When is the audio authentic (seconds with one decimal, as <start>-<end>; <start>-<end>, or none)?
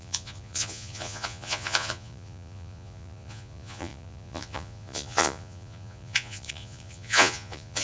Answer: none